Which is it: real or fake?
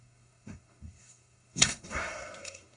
fake